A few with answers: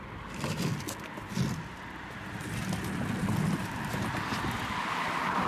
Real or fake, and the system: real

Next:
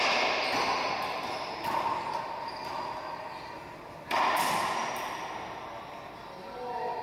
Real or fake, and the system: real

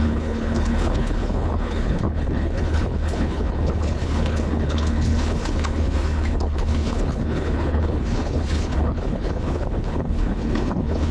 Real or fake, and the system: fake, codec, HILCodec